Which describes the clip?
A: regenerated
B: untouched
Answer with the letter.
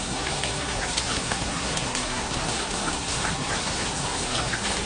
A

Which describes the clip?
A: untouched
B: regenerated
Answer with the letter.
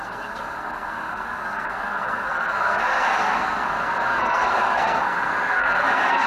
B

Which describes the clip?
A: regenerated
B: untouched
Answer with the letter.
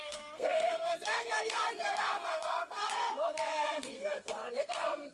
A